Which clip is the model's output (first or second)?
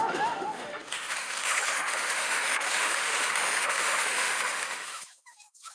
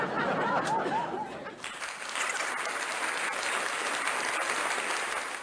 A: first